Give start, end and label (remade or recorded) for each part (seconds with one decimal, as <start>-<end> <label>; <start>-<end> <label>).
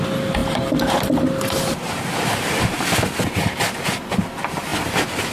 0.0-5.3 recorded